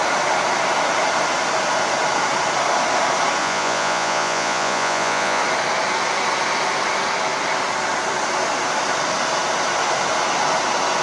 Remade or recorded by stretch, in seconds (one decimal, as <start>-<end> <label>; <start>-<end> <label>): 0.0-3.4 recorded; 3.4-5.4 remade; 5.4-11.0 recorded

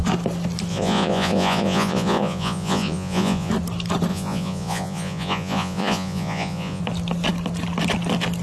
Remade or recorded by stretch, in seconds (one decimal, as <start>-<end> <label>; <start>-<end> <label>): 0.0-0.7 recorded; 0.7-3.5 remade; 3.5-4.1 recorded; 4.1-6.8 remade; 6.8-8.4 recorded

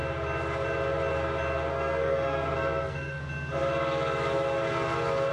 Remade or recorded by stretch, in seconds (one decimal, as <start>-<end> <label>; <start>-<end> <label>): 0.0-1.7 recorded; 1.7-3.2 remade; 3.2-5.3 recorded

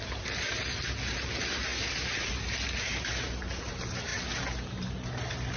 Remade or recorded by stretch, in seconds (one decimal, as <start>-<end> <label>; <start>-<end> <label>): 0.0-5.6 recorded